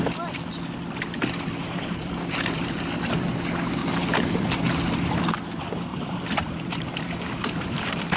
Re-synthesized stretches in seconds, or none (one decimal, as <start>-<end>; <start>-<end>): 1.6-2.8; 3.8-4.5; 5.9-8.2